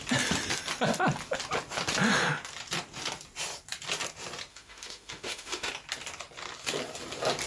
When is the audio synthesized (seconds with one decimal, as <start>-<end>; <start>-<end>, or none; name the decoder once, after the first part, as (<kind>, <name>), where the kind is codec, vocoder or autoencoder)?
4.5-5.7 (autoencoder, DAC-VAE)